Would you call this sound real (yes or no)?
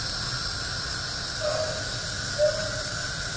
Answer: yes